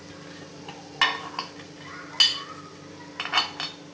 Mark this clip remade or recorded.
recorded